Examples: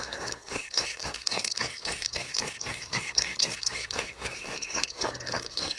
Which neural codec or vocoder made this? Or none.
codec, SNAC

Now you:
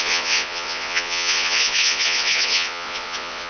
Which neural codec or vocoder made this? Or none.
vocoder, Vocos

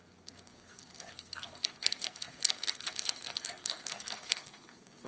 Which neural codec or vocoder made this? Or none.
codec, SNAC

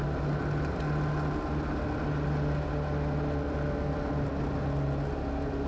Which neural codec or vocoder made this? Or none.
none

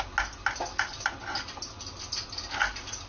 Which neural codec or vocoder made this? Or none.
none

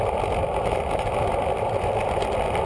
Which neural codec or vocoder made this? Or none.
none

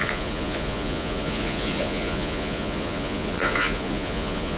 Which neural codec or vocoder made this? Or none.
vocoder, Vocos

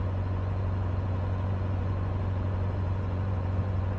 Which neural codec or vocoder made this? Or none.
vocoder, Vocos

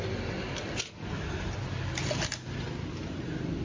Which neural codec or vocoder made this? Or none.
none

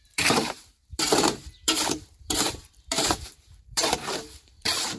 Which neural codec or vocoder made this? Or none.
vocoder, BigVGAN v2